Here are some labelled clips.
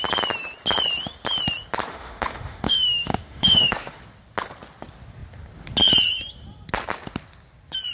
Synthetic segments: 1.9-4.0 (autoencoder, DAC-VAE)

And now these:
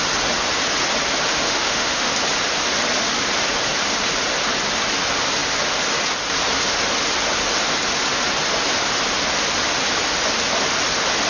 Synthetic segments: 1.3-2.1 (autoencoder, DAC-VAE)

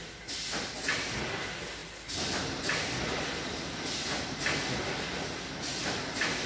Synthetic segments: none